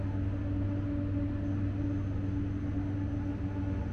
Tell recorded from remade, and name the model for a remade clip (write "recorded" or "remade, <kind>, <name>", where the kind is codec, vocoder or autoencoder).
recorded